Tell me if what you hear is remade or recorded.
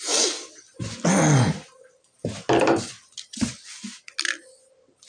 recorded